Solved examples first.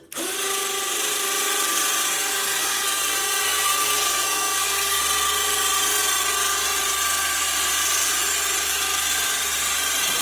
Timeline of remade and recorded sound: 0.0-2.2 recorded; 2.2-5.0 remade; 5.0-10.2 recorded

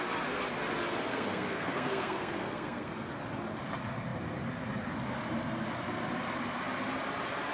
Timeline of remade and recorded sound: 0.0-1.1 recorded; 1.1-2.9 remade; 2.9-7.5 recorded

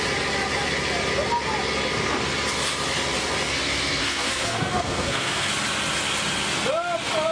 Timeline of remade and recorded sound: 0.0-4.0 recorded; 4.0-5.5 remade; 5.5-7.3 recorded